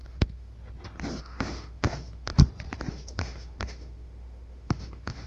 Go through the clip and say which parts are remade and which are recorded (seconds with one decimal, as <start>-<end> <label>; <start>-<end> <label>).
0.0-0.5 remade; 0.5-1.2 recorded; 1.2-2.3 remade; 2.3-2.9 recorded; 2.9-5.3 remade